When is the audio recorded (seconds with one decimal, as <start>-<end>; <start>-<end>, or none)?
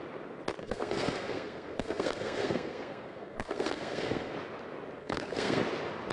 0.0-0.6; 4.3-5.0; 5.6-6.1